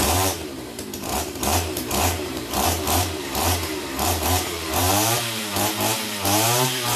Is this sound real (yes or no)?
no